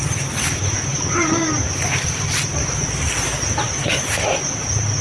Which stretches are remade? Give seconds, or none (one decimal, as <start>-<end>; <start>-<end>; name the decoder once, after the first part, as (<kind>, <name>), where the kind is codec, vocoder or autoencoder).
none